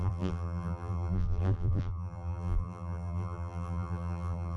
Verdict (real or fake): fake